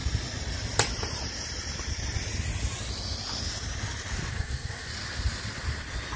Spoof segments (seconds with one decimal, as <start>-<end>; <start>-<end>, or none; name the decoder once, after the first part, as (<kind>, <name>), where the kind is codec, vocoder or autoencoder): 4.3-4.9 (codec, SNAC)